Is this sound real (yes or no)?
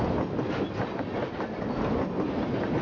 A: yes